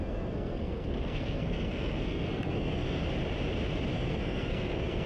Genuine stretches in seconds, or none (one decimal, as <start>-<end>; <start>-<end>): 3.1-3.9